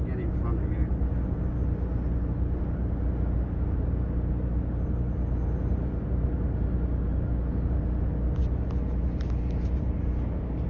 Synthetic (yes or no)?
no